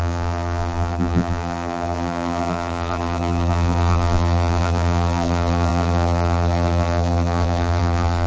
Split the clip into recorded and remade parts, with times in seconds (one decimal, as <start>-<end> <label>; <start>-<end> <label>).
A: 0.0-8.3 remade